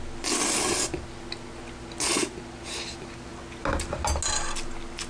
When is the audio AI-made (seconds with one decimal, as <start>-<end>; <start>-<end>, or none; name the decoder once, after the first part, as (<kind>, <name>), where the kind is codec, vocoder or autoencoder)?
none